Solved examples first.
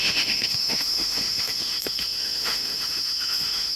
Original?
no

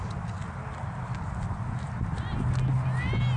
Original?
yes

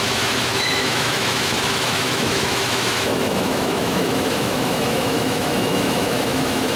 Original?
no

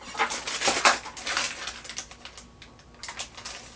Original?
yes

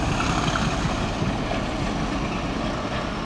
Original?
yes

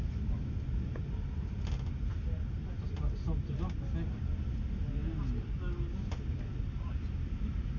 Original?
yes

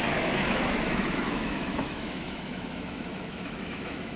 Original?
no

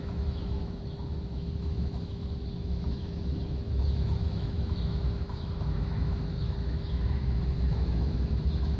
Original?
no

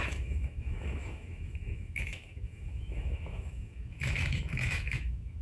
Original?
no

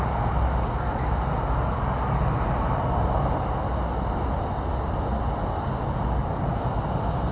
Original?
yes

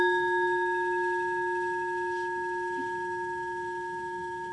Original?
no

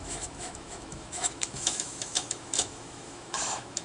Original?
no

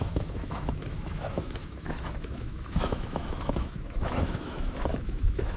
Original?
no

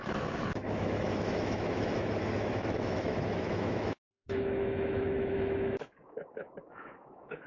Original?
no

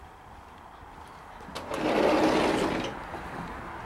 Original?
yes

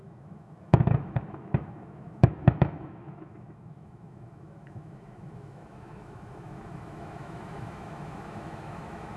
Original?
no